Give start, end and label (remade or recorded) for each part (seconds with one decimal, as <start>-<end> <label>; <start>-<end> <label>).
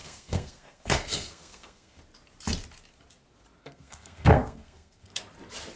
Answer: 0.0-2.0 remade; 2.0-3.6 recorded; 3.6-5.2 remade; 5.2-5.8 recorded